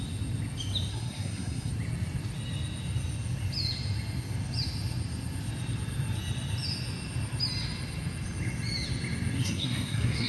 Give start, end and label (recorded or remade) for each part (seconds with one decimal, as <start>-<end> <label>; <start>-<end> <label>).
0.0-0.9 recorded; 0.9-1.7 remade; 1.7-9.4 recorded; 9.4-10.3 remade

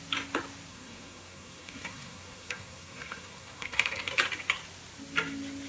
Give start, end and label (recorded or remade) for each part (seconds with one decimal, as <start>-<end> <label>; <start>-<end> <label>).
0.0-0.7 recorded; 0.7-4.1 remade; 4.1-5.7 recorded

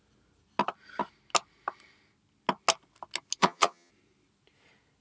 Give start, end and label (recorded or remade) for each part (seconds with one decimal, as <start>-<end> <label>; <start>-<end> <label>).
0.0-3.4 recorded; 3.4-3.9 remade; 3.9-5.0 recorded

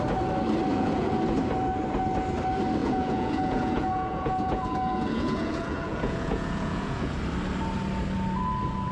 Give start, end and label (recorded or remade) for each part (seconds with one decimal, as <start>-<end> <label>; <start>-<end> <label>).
0.0-0.7 recorded; 0.7-1.2 remade; 1.2-2.8 recorded; 2.8-7.2 remade; 7.2-8.9 recorded